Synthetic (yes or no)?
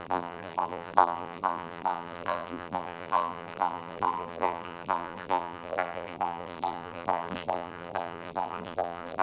yes